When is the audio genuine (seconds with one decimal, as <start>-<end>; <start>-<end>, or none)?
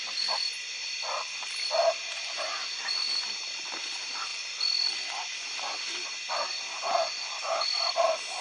0.0-8.4